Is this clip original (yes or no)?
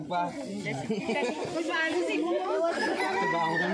yes